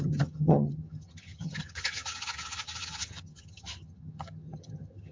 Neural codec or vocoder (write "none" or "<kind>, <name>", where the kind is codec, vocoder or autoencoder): vocoder, HiFi-GAN